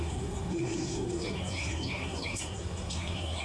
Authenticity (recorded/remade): remade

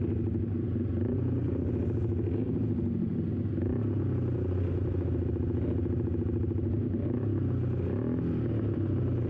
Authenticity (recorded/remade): recorded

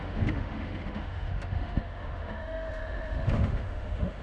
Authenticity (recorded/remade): remade